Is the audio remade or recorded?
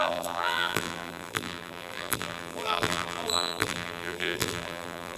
remade